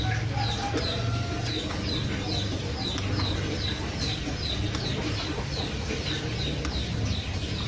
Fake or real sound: real